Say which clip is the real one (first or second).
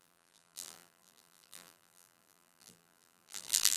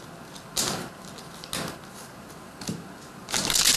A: second